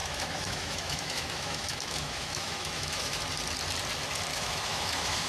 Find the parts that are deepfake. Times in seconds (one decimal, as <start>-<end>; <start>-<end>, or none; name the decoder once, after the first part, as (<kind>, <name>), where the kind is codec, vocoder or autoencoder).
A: 0.0-3.2 (autoencoder, DAC-VAE); 4.3-5.3